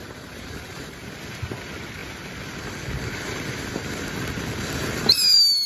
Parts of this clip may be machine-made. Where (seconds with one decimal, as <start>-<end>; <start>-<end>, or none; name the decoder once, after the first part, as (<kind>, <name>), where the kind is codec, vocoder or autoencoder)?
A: 0.0-1.6 (vocoder, BigVGAN v2)